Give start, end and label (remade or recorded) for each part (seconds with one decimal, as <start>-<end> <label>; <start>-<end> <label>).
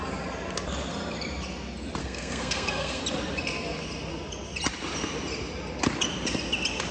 0.0-2.0 recorded; 2.0-3.0 remade; 3.0-6.9 recorded